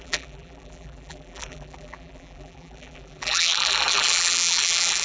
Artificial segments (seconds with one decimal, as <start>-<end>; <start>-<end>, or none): 0.0-5.0